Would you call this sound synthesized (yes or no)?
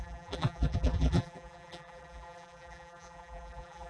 yes